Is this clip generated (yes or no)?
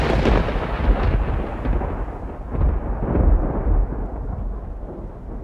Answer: no